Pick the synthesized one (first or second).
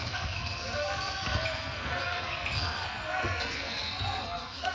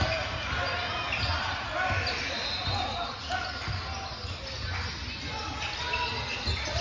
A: first